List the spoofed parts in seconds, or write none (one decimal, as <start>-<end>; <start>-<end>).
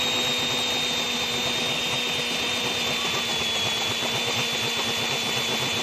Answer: none